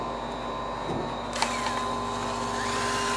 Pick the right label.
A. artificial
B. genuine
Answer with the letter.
B